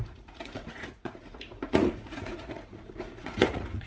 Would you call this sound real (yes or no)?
no